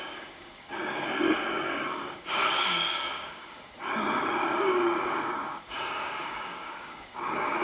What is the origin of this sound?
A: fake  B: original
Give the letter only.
A